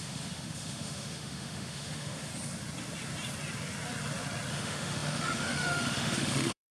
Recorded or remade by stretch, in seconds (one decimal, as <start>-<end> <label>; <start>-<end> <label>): 0.0-2.3 remade; 2.3-4.5 recorded; 4.5-6.7 remade

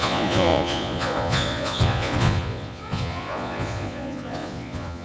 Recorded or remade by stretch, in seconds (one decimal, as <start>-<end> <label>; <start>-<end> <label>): 0.0-5.0 remade

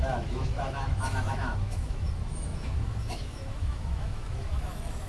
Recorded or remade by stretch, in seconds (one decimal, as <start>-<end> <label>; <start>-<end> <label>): 0.0-5.1 remade

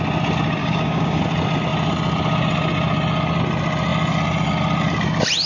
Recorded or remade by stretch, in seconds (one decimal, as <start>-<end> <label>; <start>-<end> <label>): 0.0-0.6 recorded; 0.6-1.2 remade; 1.2-5.5 recorded

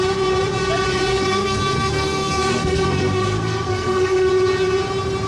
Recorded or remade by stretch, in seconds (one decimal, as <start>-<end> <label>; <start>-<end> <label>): 0.0-1.1 recorded; 1.1-4.3 remade; 4.3-5.3 recorded

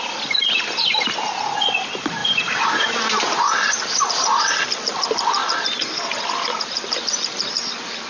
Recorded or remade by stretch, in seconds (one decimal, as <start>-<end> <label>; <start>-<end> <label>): 0.0-2.2 recorded; 2.2-2.7 remade; 2.7-8.1 recorded